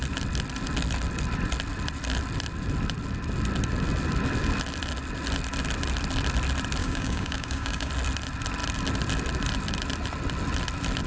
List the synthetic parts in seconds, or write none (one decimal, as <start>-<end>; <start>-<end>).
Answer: 6.8-7.9